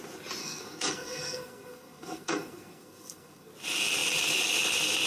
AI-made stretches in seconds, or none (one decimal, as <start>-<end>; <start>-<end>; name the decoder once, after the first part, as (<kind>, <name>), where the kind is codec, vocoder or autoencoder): 0.4-3.5 (codec, SNAC)